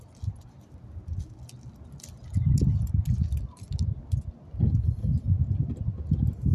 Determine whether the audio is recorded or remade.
recorded